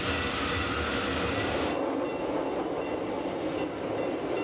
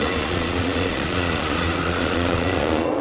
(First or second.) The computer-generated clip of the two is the second